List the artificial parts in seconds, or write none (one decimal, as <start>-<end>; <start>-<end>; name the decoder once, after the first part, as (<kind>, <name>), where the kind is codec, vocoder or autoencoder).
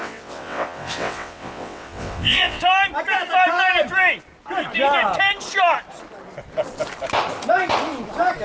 0.0-2.6 (vocoder, WaveNeXt)